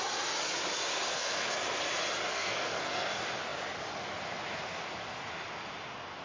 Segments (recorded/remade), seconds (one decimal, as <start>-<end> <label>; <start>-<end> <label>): 0.0-0.9 recorded; 0.9-1.5 remade; 1.5-2.3 recorded; 2.3-3.1 remade; 3.1-6.2 recorded